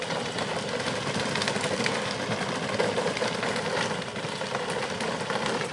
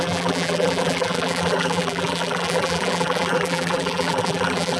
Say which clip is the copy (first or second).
second